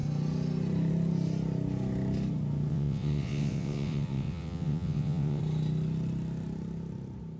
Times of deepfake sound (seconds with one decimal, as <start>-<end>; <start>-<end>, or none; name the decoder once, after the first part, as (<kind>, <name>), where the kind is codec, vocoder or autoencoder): 2.7-5.4 (vocoder, WaveNeXt)